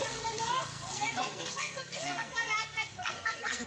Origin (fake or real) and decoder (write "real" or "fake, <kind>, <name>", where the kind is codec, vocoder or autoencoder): fake, codec, SNAC